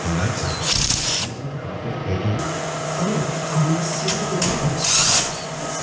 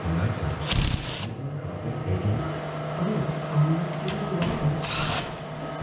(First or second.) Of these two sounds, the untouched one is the second